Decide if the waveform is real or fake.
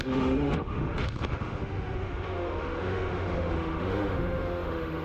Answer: fake